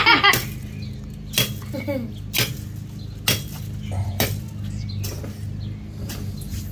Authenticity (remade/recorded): recorded